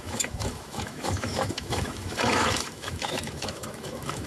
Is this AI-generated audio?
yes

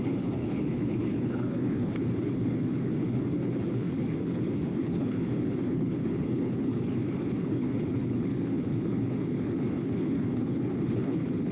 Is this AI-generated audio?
yes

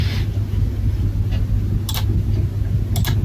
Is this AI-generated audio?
no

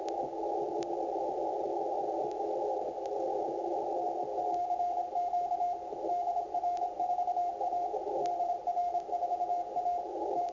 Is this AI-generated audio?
no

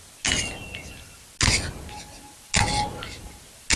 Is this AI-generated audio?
no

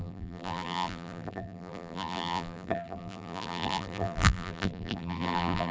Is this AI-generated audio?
yes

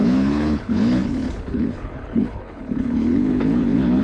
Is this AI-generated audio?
yes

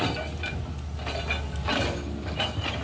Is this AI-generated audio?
no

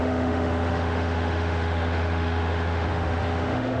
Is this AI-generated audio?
yes